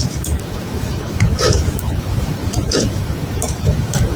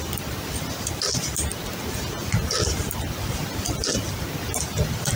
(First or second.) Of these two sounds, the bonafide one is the second